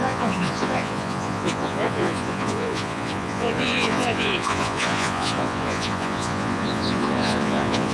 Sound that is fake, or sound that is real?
fake